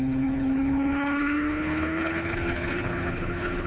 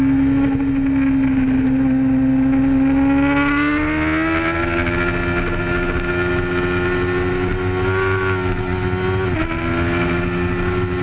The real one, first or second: second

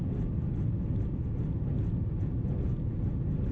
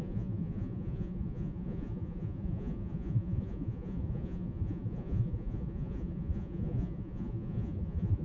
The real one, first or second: first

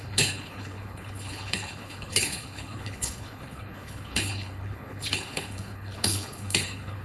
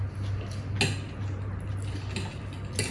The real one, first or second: second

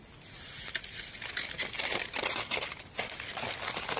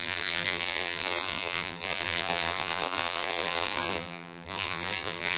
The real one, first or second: first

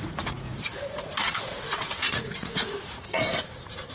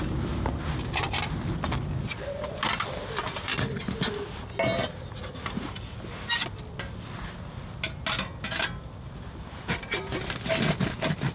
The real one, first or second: second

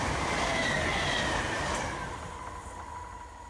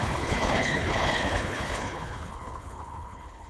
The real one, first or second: first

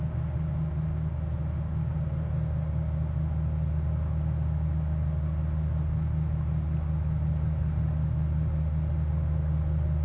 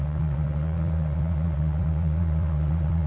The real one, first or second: first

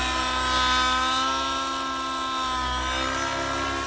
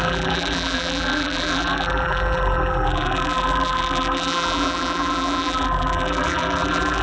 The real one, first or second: first